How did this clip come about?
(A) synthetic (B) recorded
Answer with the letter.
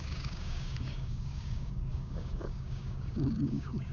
A